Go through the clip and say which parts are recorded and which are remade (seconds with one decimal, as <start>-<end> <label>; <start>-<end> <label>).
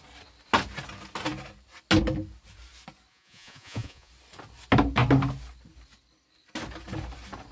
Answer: 0.0-3.1 recorded; 3.1-4.1 remade; 4.1-7.5 recorded